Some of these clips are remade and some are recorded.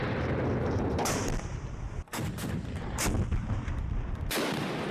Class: remade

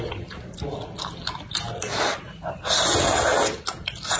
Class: recorded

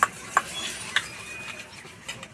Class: recorded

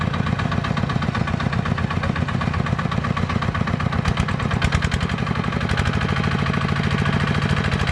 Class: recorded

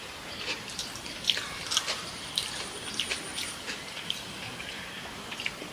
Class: remade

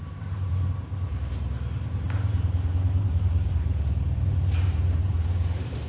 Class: remade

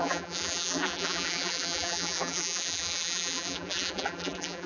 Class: remade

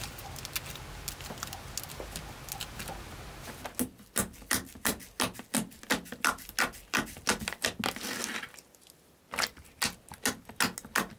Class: recorded